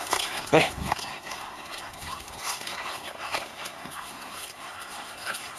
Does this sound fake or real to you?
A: fake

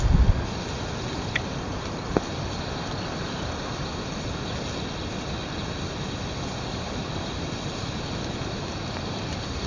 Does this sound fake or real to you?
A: real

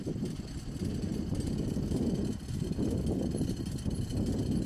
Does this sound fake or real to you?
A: real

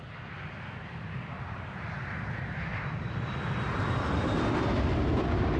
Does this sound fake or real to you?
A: real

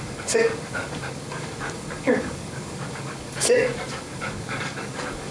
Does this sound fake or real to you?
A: fake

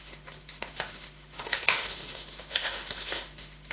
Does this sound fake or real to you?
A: fake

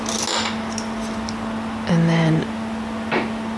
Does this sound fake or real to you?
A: real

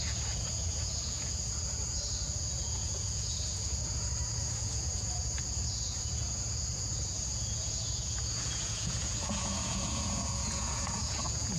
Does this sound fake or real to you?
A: fake